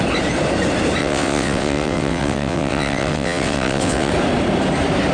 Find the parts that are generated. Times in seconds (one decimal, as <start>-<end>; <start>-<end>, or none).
1.0-4.1